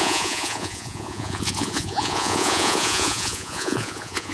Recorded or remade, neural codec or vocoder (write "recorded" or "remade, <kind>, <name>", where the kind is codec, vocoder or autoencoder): remade, vocoder, Vocos